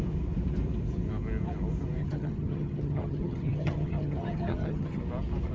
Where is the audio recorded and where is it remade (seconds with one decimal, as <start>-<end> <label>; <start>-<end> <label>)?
0.0-2.0 recorded; 2.0-5.0 remade; 5.0-5.5 recorded